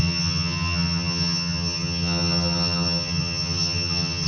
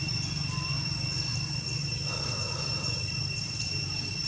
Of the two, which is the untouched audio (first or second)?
second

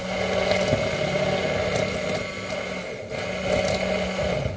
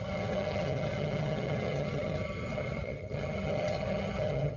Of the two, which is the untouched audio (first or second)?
first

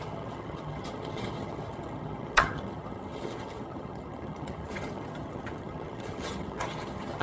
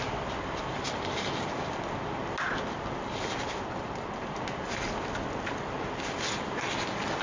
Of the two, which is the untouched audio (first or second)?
second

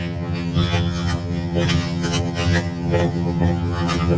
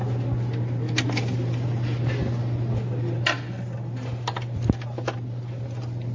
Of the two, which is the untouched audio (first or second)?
second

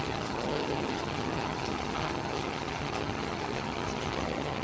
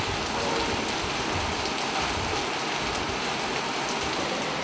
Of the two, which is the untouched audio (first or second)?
second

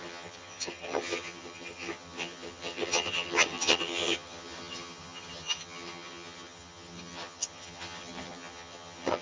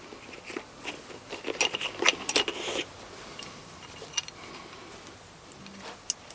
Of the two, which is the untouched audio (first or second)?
second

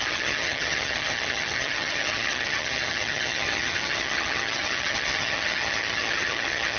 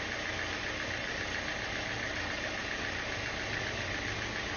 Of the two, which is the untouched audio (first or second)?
second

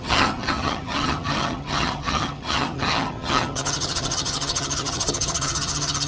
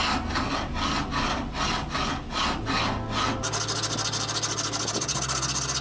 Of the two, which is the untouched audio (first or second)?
second